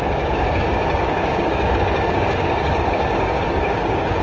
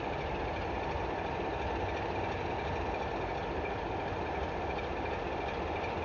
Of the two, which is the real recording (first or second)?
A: second